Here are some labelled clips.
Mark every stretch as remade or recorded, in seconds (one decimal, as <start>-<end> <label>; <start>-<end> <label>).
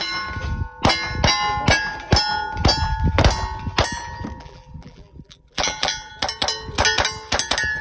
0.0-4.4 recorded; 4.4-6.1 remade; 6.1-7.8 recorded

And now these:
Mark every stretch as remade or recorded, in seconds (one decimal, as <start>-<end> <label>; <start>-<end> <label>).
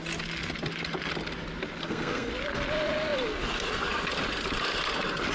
0.0-1.8 recorded; 1.8-2.3 remade; 2.3-5.3 recorded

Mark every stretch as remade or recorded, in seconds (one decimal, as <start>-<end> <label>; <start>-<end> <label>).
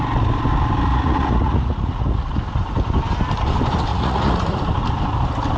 0.0-0.9 recorded; 0.9-2.3 remade; 2.3-3.9 recorded; 3.9-4.6 remade; 4.6-5.6 recorded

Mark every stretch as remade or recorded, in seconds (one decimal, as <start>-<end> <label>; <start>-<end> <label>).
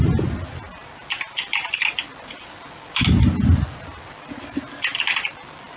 0.0-5.8 recorded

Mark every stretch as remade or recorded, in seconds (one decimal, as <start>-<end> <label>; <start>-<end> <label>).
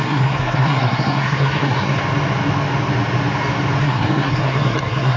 0.0-2.0 remade; 2.0-3.8 recorded; 3.8-5.2 remade